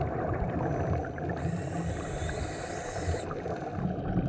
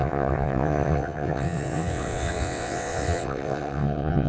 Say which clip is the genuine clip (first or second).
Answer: first